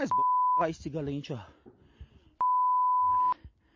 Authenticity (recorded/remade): recorded